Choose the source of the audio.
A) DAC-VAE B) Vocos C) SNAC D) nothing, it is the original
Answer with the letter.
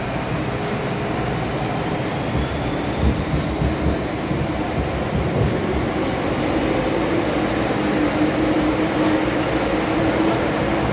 D